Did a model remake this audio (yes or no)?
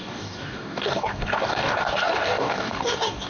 yes